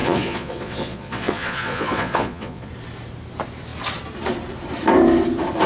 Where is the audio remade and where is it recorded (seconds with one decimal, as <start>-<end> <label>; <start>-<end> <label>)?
0.0-2.7 remade; 2.7-5.7 recorded